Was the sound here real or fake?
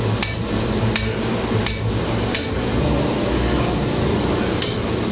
real